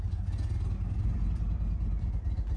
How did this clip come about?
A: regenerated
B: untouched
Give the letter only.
B